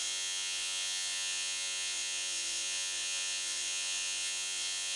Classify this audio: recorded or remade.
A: remade